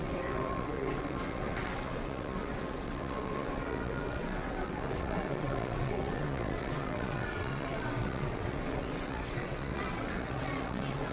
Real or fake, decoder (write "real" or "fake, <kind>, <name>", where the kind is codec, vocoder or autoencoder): fake, vocoder, WaveNeXt